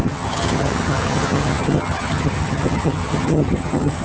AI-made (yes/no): yes